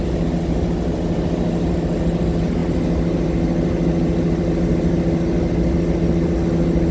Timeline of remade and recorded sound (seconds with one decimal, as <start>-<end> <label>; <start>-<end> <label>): 0.0-6.9 recorded